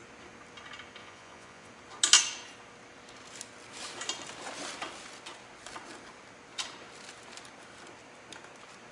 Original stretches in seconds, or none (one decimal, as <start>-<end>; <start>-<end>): 0.0-1.0; 1.7-8.9